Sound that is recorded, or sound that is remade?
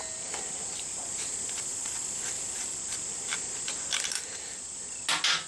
recorded